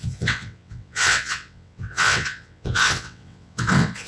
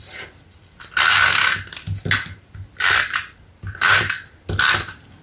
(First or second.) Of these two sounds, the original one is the second